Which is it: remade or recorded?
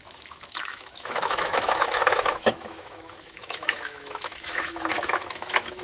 remade